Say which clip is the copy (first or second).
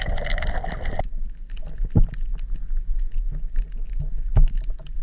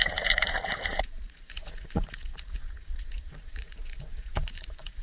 second